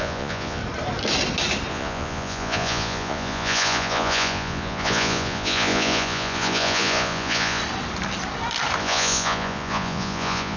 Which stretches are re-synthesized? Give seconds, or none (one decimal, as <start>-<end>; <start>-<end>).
0.0-0.6; 1.7-7.6; 8.8-10.6